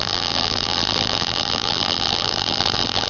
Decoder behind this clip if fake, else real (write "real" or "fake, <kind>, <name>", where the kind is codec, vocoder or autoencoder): fake, vocoder, BigVGAN v2